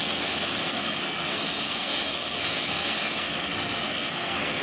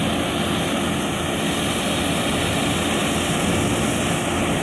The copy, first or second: first